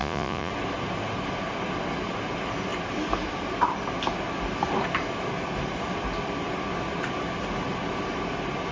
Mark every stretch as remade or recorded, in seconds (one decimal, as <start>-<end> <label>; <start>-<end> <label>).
0.0-0.5 remade; 0.5-8.7 recorded